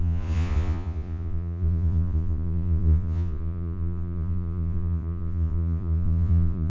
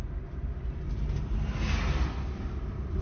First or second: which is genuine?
second